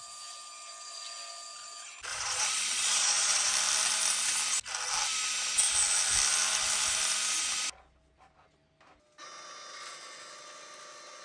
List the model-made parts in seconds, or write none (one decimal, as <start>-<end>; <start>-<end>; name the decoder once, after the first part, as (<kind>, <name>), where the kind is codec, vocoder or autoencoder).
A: 2.1-3.5 (vocoder, Vocos)